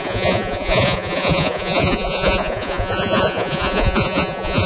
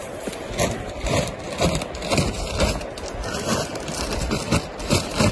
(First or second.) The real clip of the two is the second